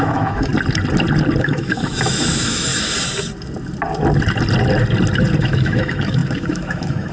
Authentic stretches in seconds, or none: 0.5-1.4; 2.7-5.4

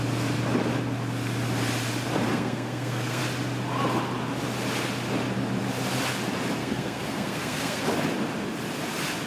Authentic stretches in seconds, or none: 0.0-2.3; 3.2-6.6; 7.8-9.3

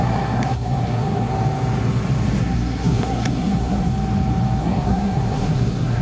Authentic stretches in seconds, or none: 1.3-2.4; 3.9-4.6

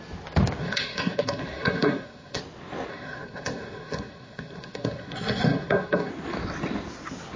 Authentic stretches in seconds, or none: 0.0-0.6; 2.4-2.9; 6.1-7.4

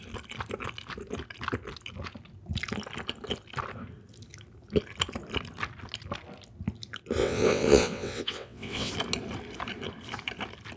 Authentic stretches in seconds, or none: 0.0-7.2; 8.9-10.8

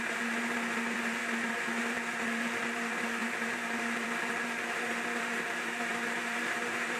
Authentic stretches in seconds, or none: 1.2-1.8